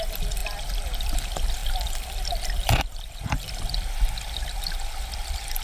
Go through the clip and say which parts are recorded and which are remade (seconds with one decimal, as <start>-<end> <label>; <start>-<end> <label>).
0.0-0.4 remade; 0.4-1.0 recorded; 1.0-5.6 remade